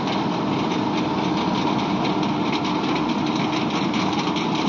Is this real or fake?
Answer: real